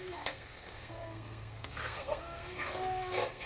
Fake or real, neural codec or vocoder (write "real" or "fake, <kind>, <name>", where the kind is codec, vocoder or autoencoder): fake, codec, SNAC